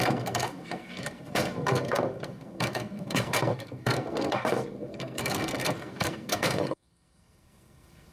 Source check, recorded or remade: remade